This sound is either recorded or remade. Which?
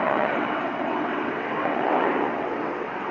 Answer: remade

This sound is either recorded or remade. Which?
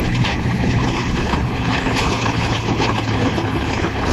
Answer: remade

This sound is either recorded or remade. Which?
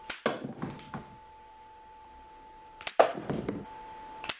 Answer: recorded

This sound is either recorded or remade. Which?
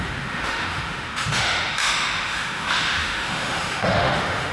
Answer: remade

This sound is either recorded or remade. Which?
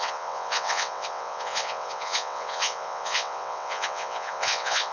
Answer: remade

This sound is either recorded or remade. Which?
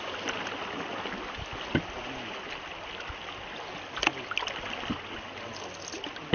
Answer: recorded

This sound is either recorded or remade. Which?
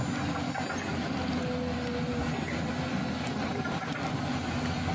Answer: recorded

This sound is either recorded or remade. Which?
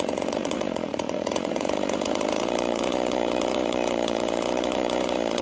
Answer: remade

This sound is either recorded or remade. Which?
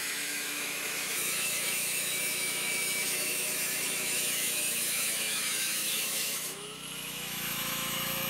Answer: remade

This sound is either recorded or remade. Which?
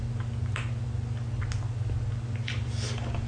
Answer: recorded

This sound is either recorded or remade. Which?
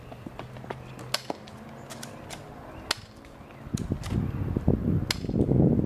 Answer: recorded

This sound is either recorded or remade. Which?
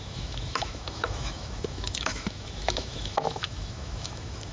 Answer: remade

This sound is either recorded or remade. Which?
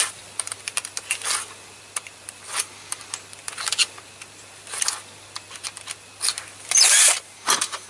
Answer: recorded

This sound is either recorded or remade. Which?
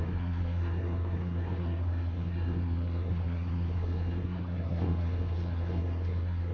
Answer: remade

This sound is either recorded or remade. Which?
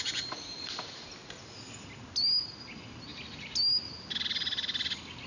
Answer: recorded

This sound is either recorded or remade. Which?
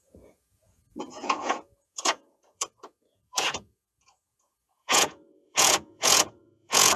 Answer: remade